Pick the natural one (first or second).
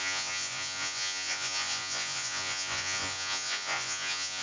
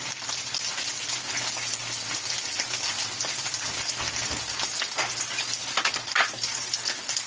second